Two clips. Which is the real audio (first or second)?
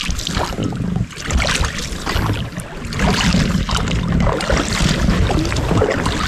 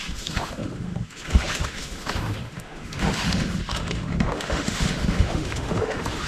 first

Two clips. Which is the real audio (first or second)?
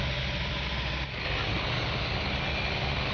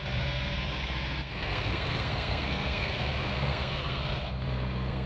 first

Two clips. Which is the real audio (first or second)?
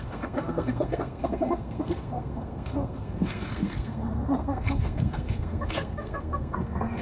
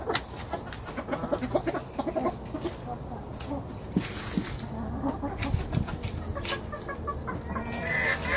second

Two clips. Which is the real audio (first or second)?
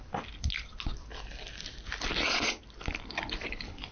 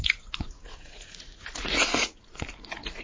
first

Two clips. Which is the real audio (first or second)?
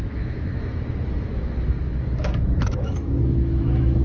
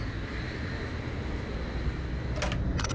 second